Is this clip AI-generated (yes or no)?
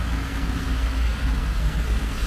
yes